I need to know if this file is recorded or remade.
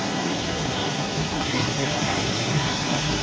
remade